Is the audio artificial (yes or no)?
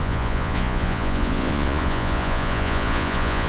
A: yes